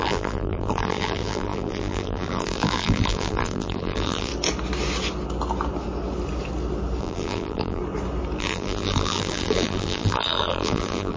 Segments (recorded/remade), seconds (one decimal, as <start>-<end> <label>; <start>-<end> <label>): 0.0-4.3 remade; 4.3-7.0 recorded; 7.0-7.8 remade; 7.8-8.4 recorded; 8.4-11.2 remade